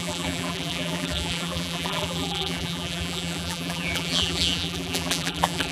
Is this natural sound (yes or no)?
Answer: no